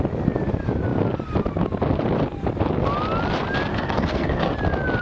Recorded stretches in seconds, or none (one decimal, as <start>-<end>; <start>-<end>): 0.0-3.7; 4.5-5.0

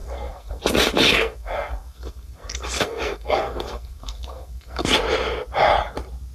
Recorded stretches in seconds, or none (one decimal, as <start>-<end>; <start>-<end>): 0.6-1.1; 4.9-6.3

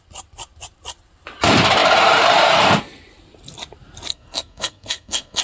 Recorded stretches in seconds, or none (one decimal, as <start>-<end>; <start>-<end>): 0.0-4.1

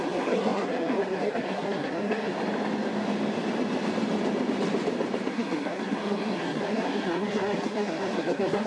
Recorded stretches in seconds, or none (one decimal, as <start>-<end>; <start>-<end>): 2.3-5.3

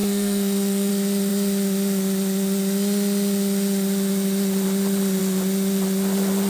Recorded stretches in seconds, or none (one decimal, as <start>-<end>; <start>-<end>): 0.9-6.5

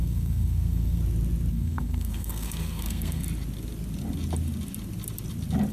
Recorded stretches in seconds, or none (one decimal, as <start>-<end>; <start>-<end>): 1.0-1.5; 3.2-5.7